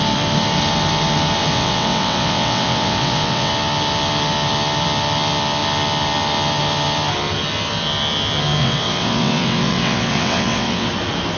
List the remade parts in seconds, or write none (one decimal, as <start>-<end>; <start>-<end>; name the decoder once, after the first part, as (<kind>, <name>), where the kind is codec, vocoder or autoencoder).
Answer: 1.4-3.5 (vocoder, WaveNeXt); 8.6-10.9